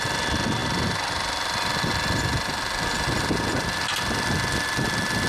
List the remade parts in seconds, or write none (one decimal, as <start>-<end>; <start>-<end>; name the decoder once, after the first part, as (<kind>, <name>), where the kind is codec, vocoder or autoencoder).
none